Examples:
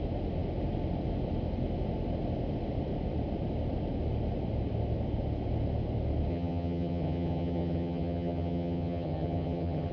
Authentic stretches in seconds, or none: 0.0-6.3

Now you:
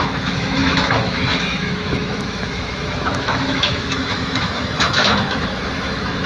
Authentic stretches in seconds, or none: none

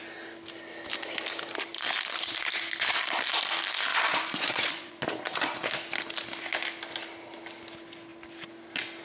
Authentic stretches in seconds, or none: 0.0-3.9; 5.7-9.0

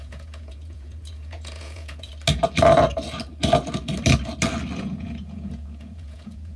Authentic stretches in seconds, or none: 2.1-4.8